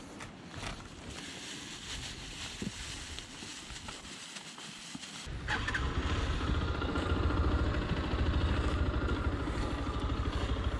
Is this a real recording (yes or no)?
yes